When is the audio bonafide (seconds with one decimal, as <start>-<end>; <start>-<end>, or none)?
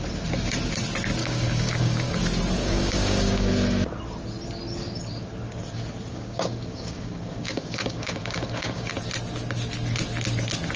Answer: 0.0-1.2; 2.2-2.6; 3.5-6.1; 8.9-10.8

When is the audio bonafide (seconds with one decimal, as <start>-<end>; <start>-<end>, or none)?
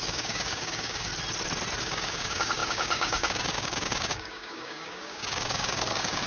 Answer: 1.1-1.8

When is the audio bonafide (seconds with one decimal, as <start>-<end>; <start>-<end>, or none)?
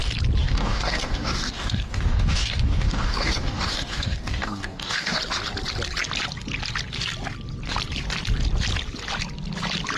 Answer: 0.0-0.4; 5.2-10.0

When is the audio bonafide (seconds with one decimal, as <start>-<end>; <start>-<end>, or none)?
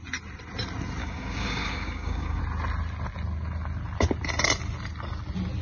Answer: 0.0-1.0; 2.4-5.6